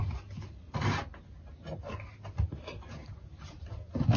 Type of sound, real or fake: real